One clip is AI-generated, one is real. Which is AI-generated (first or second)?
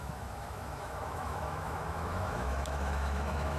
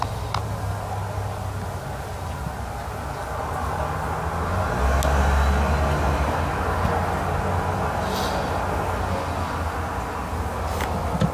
first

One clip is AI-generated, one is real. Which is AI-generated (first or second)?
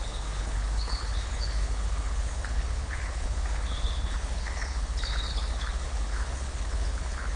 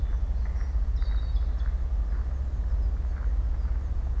first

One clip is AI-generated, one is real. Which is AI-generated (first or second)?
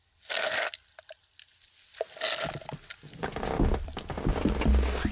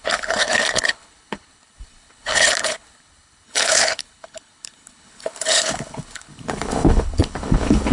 second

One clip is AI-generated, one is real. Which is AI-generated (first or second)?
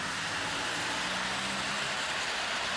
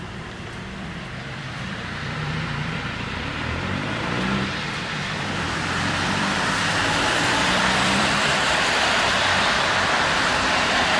second